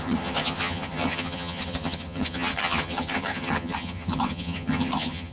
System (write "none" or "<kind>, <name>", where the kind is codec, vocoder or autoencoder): vocoder, HiFi-GAN